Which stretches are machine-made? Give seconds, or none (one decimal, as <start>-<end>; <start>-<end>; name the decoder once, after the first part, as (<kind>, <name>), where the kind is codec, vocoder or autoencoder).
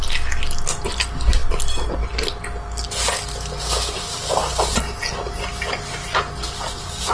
none